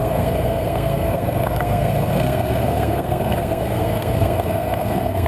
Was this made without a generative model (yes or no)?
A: no